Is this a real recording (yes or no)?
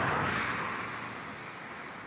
yes